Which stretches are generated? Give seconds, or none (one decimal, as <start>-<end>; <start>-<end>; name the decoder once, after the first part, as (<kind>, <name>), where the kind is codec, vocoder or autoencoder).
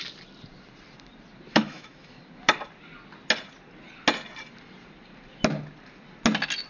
1.5-2.2 (autoencoder, DAC-VAE)